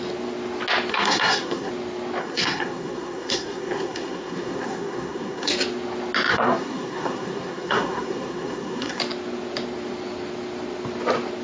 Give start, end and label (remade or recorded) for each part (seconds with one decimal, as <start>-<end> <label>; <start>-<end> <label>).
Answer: 0.0-0.9 recorded; 0.9-1.7 remade; 1.7-2.2 recorded; 2.2-5.5 remade; 5.5-6.3 recorded; 6.3-9.0 remade; 9.0-11.4 recorded